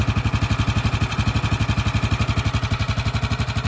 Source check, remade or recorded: recorded